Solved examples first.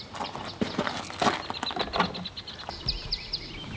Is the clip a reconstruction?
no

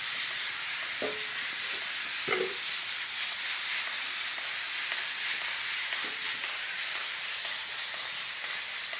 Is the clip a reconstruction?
no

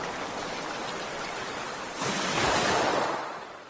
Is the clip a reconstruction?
yes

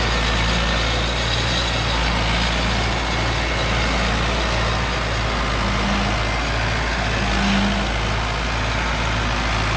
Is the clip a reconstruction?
no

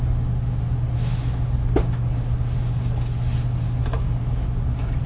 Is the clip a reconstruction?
no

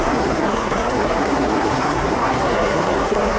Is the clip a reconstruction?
yes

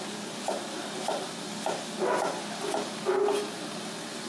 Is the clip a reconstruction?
no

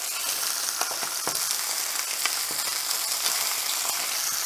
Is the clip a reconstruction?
no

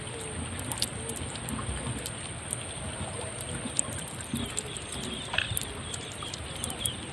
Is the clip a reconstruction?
no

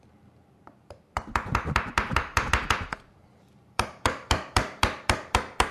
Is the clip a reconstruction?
yes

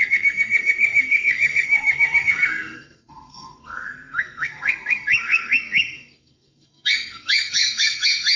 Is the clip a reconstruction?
yes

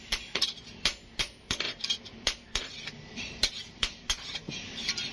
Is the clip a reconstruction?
no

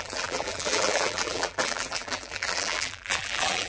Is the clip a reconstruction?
yes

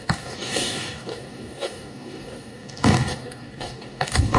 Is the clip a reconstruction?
yes